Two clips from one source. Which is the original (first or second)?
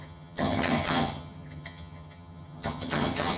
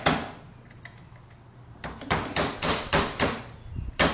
second